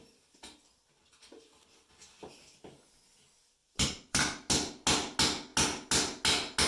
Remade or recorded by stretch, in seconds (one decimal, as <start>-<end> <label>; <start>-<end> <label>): 0.0-3.6 recorded; 3.6-4.5 remade; 4.5-6.7 recorded